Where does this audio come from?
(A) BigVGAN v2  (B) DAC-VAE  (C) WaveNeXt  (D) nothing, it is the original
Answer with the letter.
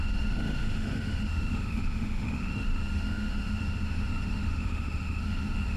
B